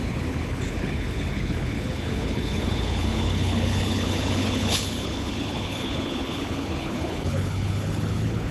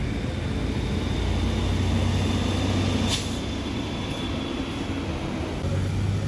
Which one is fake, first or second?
first